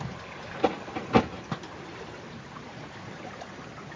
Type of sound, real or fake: real